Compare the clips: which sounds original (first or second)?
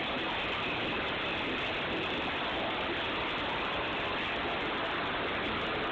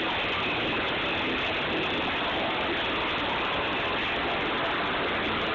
second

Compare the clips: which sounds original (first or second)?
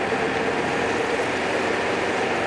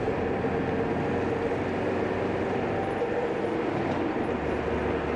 second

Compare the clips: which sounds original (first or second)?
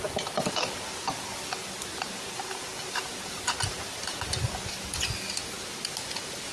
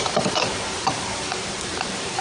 first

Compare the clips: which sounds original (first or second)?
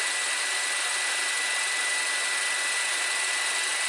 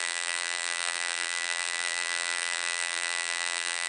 first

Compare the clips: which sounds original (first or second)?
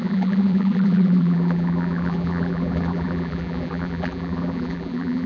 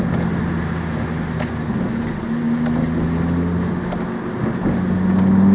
second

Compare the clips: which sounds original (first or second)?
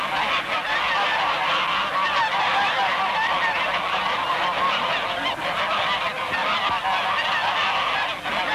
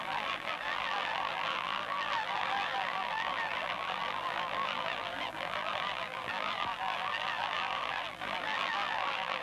first